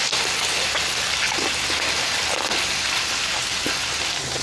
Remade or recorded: recorded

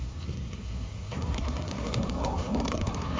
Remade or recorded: remade